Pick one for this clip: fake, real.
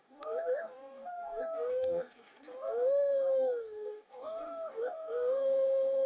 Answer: fake